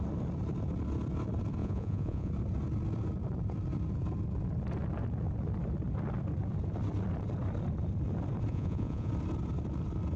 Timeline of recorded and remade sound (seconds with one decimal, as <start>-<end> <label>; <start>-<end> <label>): 0.0-1.6 recorded; 1.6-2.3 remade; 2.3-8.5 recorded; 8.5-9.1 remade; 9.1-10.2 recorded